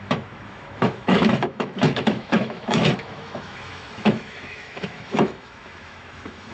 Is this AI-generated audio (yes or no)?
yes